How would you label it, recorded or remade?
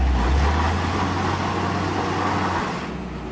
recorded